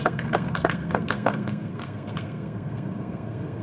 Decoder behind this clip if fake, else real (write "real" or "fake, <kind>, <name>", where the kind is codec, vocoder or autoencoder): fake, codec, SNAC